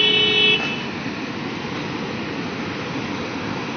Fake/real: real